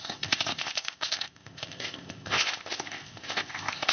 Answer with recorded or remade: remade